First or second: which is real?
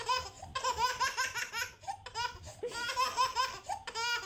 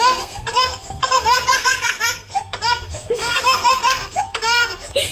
first